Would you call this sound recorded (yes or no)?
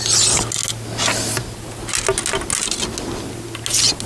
yes